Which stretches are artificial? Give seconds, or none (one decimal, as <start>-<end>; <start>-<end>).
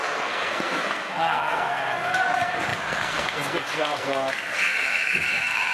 0.0-5.7